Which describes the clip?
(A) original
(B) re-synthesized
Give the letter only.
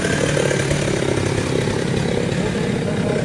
A